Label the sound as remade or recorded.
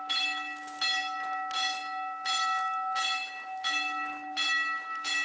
recorded